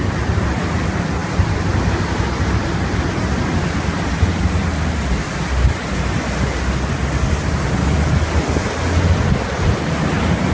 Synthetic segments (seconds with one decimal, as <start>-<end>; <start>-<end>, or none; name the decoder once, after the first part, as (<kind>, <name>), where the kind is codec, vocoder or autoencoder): none